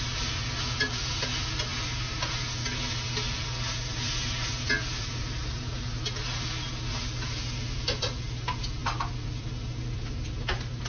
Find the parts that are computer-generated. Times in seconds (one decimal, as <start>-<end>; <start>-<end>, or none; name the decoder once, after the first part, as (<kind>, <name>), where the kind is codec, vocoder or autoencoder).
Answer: none